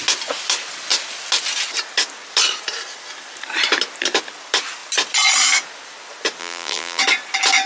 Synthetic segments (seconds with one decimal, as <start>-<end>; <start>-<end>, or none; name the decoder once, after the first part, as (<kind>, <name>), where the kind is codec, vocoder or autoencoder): 6.4-7.0 (vocoder, BigVGAN v2)

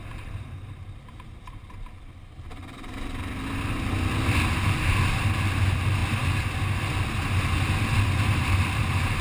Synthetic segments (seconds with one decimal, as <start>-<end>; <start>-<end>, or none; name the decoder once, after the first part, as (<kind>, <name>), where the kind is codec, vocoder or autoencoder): 0.0-2.6 (vocoder, BigVGAN v2); 5.1-6.0; 8.4-9.2

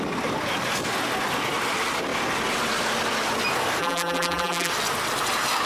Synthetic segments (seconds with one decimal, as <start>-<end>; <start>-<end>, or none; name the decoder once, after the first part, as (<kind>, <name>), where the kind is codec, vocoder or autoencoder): 3.8-4.7 (vocoder, BigVGAN v2)